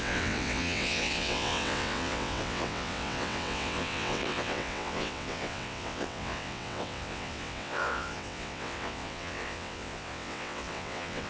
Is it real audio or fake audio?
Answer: fake